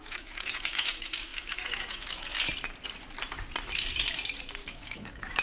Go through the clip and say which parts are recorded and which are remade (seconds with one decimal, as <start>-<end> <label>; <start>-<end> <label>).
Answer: 0.0-2.3 remade; 2.3-4.7 recorded; 4.7-5.4 remade